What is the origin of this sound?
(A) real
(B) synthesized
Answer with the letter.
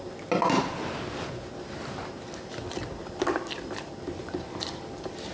A